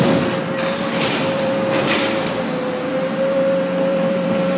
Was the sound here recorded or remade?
remade